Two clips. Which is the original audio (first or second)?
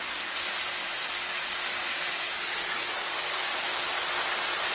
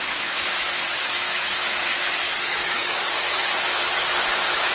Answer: first